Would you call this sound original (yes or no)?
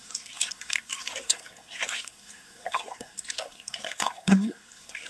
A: no